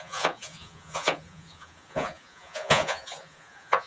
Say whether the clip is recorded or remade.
remade